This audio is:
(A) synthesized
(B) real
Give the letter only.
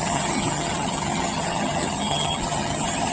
A